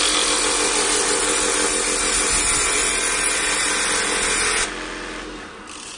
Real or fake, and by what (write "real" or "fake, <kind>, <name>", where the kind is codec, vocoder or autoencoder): real